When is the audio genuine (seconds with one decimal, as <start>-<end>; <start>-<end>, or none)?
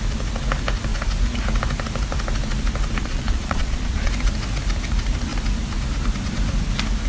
0.0-3.0; 4.1-7.1